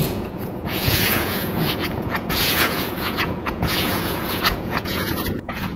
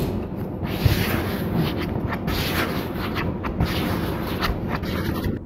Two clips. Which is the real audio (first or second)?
second